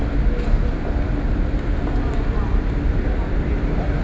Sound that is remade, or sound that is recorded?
recorded